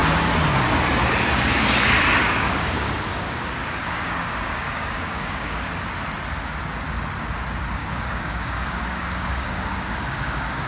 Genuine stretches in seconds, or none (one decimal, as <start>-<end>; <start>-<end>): 0.0-2.2; 5.6-7.8